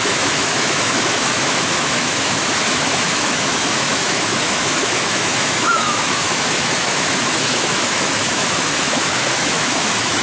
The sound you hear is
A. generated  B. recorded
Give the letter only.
A